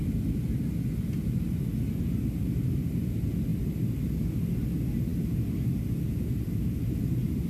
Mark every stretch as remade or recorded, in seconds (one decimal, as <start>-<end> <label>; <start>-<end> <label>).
0.0-7.5 recorded